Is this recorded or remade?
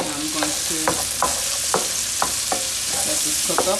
recorded